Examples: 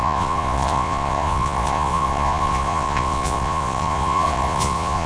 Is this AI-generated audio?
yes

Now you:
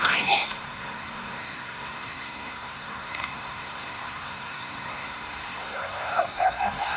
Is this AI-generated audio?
yes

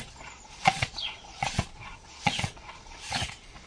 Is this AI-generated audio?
yes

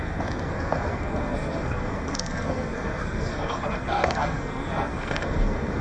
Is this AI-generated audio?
yes